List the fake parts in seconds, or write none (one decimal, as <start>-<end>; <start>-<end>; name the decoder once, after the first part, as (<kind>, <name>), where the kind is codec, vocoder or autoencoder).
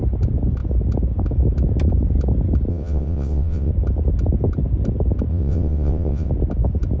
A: 2.7-3.7 (vocoder, WaveNeXt); 5.3-6.3